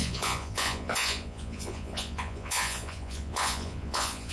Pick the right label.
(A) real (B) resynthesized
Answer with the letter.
B